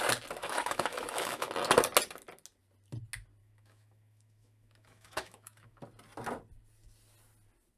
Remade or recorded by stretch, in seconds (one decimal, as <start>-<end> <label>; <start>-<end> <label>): 0.0-0.4 recorded; 0.4-1.5 remade; 1.5-3.4 recorded; 3.4-5.8 remade; 5.8-7.8 recorded